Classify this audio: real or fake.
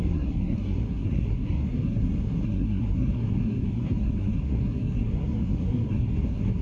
fake